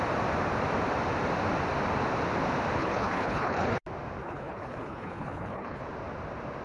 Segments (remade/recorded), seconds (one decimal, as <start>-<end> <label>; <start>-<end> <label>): 0.0-2.8 recorded; 2.8-3.8 remade; 3.8-4.2 recorded; 4.2-5.8 remade; 5.8-6.6 recorded